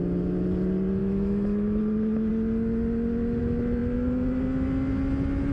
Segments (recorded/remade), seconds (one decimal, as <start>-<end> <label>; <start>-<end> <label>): 0.0-1.0 recorded; 1.0-1.8 remade; 1.8-5.5 recorded